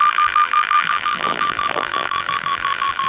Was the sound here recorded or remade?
remade